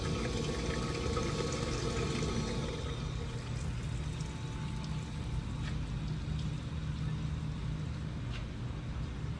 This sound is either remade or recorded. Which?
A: recorded